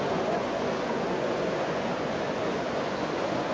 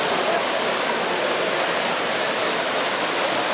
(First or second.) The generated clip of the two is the first